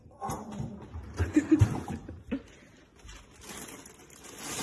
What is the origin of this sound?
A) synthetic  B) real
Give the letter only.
B